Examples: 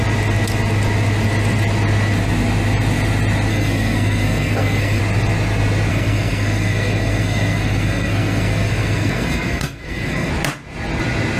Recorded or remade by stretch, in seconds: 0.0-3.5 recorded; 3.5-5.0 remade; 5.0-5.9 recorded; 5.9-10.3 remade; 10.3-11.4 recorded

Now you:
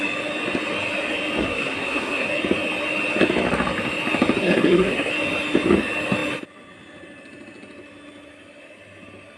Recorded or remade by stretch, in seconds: 0.0-1.4 recorded; 1.4-2.3 remade; 2.3-4.4 recorded; 4.4-5.1 remade; 5.1-9.4 recorded

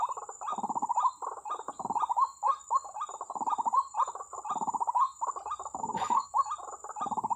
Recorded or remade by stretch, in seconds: 0.0-5.8 recorded; 5.8-6.3 remade; 6.3-7.4 recorded

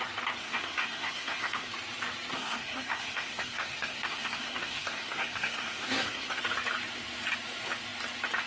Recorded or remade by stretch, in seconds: 0.0-0.4 recorded; 0.4-1.7 remade; 1.7-2.3 recorded; 2.3-6.4 remade; 6.4-8.5 recorded

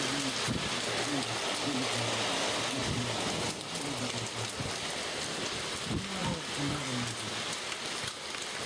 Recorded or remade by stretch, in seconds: 0.0-8.7 recorded

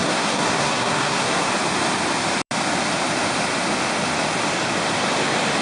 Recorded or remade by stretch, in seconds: 0.0-1.5 remade; 1.5-5.6 recorded